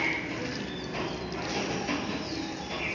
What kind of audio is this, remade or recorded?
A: recorded